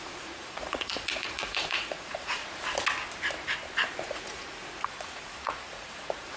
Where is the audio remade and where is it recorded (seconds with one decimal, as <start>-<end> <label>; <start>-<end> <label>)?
0.0-2.4 remade; 2.4-4.0 recorded; 4.0-6.4 remade

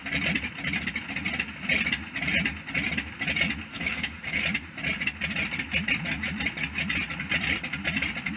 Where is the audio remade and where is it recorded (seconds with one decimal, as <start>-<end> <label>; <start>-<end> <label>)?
0.0-3.7 recorded; 3.7-4.4 remade; 4.4-8.4 recorded